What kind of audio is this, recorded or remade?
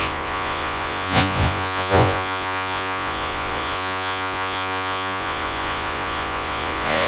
remade